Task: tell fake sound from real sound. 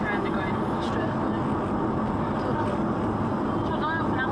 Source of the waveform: real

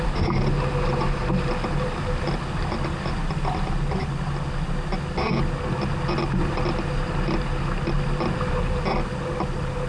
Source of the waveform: real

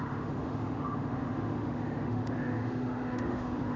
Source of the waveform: fake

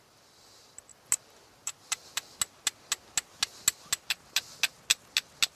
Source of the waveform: real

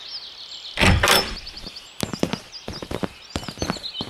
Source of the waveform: real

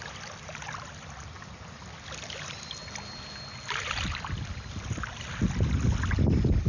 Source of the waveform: real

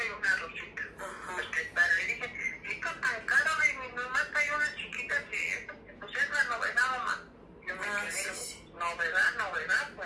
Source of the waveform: real